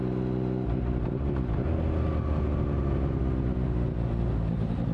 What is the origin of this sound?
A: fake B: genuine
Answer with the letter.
B